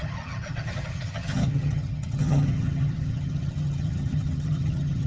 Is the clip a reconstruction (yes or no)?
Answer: yes